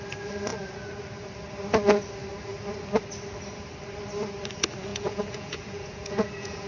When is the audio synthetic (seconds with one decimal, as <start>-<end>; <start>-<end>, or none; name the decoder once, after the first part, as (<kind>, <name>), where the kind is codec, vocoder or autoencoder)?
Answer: 4.9-6.7 (vocoder, Vocos)